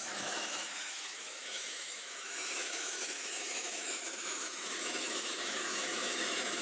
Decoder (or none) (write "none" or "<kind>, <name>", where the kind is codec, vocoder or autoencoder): autoencoder, DAC-VAE